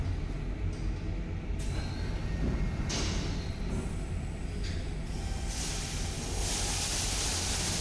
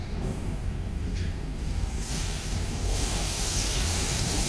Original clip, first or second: first